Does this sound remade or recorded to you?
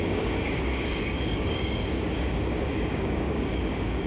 remade